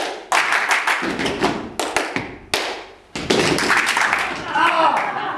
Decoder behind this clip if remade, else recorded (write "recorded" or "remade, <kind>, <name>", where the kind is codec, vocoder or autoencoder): recorded